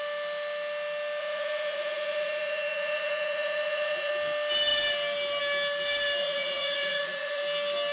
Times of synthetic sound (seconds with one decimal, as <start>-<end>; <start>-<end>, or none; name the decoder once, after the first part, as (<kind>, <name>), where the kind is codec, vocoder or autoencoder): 1.2-4.1 (vocoder, Vocos); 6.2-7.4